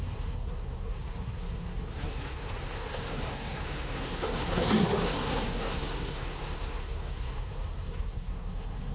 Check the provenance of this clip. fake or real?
fake